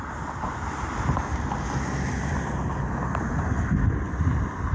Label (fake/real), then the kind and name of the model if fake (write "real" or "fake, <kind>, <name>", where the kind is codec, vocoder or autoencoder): real